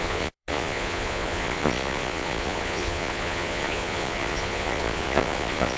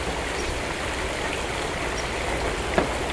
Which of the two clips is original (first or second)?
second